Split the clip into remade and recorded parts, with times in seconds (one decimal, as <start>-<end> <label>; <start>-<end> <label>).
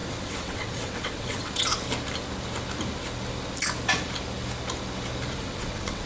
0.0-1.7 remade; 1.7-5.4 recorded; 5.4-6.1 remade